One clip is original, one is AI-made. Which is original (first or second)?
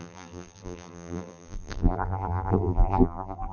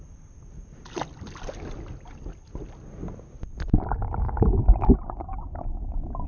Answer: second